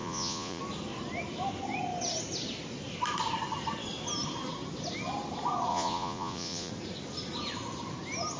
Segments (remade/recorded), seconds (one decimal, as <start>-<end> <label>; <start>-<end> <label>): 0.0-0.6 remade; 0.6-5.7 recorded; 5.7-6.7 remade; 6.7-8.4 recorded